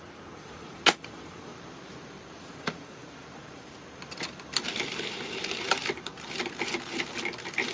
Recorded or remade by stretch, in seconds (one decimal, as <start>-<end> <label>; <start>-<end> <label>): 0.0-1.5 remade; 1.5-2.4 recorded; 2.4-3.0 remade; 3.0-7.7 recorded